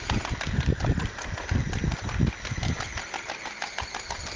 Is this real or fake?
real